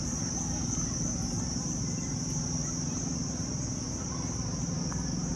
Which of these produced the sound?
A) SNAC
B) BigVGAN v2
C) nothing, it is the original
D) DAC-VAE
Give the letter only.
C